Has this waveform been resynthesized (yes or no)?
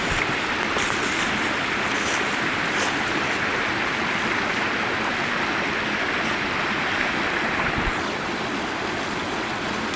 no